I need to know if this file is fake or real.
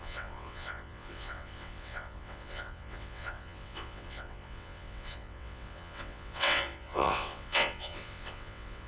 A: fake